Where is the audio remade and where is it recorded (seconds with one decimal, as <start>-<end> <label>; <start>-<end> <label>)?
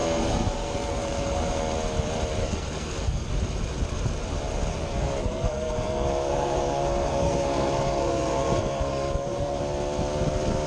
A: 0.0-1.6 remade; 1.6-2.4 recorded; 2.4-3.3 remade; 3.3-4.7 recorded; 4.7-9.6 remade; 9.6-10.7 recorded